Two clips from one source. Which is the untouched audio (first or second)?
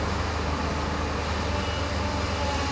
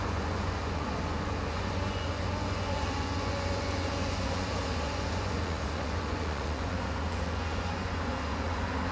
first